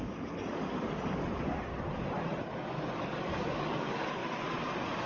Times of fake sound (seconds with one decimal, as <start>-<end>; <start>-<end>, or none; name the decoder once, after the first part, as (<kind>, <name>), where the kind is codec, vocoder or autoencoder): 0.0-1.7 (codec, DAC); 2.5-4.2